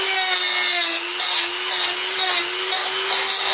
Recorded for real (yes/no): yes